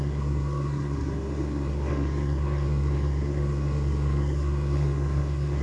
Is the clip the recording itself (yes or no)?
no